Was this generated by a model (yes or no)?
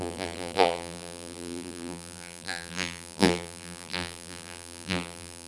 yes